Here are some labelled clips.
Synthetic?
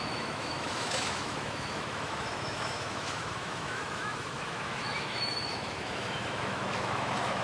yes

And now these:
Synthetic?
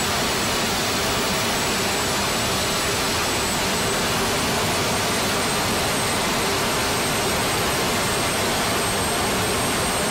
no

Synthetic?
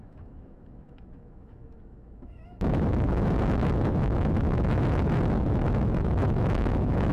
yes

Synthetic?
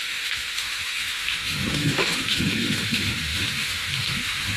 yes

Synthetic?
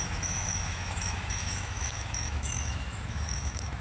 yes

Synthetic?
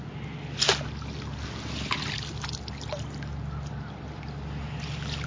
no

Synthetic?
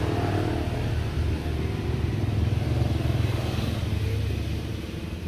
no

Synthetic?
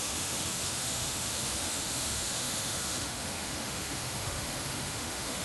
yes